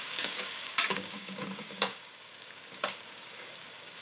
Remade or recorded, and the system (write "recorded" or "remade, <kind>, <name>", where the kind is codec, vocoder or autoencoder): remade, codec, DAC